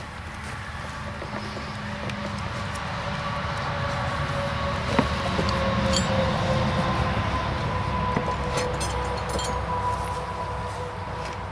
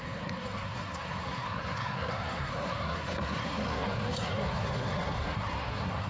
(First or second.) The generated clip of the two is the second